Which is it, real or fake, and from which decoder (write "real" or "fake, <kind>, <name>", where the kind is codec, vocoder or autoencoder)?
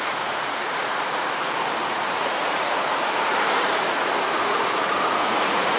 fake, vocoder, Vocos